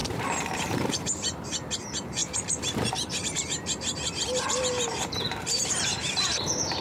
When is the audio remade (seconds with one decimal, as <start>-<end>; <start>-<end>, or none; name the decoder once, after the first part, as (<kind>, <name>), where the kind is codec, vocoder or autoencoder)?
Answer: 0.0-6.8 (vocoder, BigVGAN v2)